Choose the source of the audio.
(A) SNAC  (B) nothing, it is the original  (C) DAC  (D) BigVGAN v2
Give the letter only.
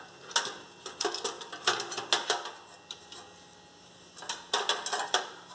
B